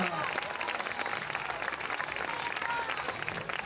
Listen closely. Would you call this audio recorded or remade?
recorded